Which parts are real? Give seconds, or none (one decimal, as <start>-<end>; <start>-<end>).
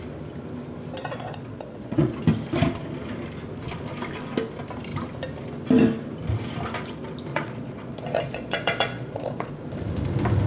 0.0-1.0; 2.1-7.3; 9.5-10.5